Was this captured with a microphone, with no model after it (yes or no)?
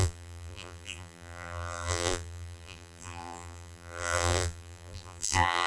no